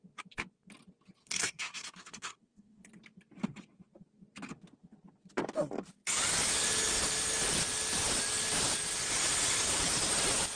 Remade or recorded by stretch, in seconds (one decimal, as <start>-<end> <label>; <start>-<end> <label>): 0.0-1.2 recorded; 1.2-2.9 remade; 2.9-10.6 recorded